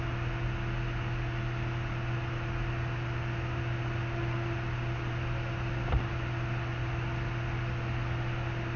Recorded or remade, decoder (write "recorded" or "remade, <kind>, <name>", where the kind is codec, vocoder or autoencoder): recorded